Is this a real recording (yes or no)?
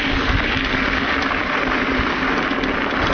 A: yes